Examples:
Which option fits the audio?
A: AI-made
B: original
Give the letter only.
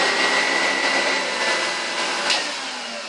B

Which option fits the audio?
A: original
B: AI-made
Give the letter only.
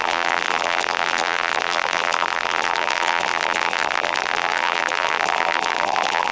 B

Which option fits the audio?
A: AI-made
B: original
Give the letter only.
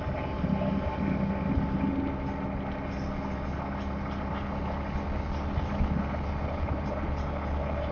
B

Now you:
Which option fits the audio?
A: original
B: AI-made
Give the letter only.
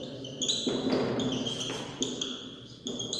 A